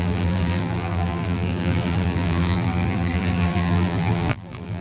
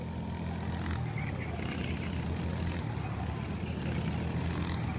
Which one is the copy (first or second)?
first